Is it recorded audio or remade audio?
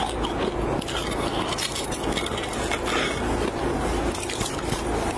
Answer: recorded